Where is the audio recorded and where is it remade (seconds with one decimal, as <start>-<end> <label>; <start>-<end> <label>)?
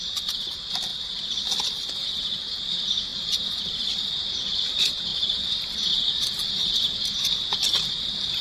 0.0-8.4 recorded